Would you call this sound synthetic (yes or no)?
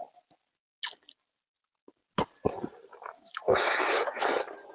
no